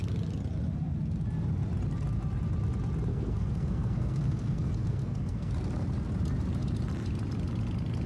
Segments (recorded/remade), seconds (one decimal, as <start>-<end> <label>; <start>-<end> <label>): 0.0-3.1 recorded; 3.1-5.5 remade; 5.5-8.1 recorded